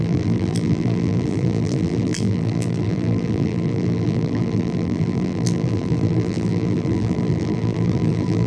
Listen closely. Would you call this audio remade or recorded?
remade